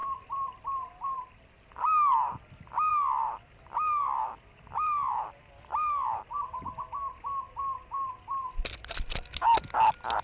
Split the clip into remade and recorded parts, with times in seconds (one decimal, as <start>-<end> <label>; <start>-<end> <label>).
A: 0.0-1.3 remade; 1.3-4.0 recorded; 4.0-6.4 remade; 6.4-10.2 recorded